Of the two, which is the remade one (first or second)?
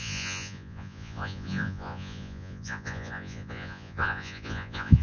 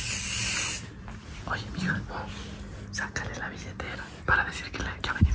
first